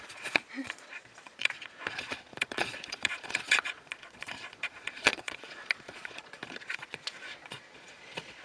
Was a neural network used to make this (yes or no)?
yes